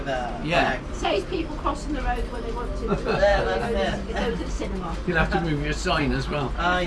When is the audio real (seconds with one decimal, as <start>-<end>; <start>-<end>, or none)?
0.0-6.9